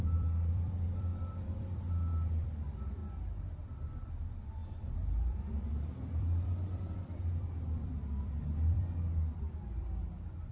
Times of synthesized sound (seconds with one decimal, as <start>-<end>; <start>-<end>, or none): 0.0-3.0; 3.5-10.5